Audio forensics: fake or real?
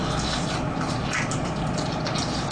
real